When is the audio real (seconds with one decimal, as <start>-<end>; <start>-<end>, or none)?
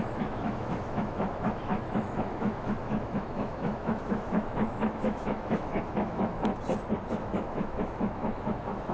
6.5-7.1